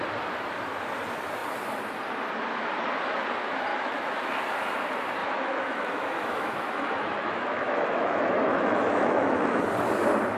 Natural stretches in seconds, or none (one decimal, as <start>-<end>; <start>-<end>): 0.0-3.7; 4.3-5.2; 9.6-10.4